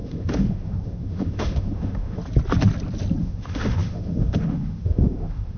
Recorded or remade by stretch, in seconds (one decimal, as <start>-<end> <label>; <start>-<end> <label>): 0.0-2.2 remade; 2.2-3.2 recorded; 3.2-5.6 remade